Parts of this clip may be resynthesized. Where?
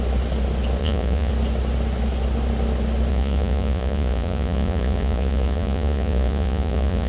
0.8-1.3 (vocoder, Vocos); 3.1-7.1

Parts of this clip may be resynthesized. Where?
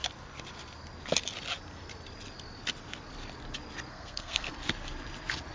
3.9-4.5 (codec, SNAC)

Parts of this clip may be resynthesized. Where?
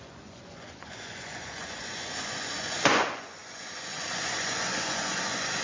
0.0-5.6 (vocoder, Vocos)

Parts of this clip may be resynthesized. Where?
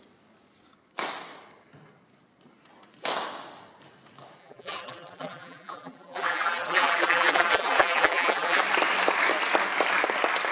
4.4-8.6 (vocoder, BigVGAN v2)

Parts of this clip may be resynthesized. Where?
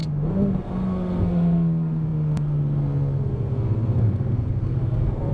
0.0-5.3 (codec, SNAC)